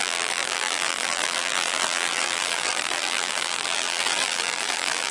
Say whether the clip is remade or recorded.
remade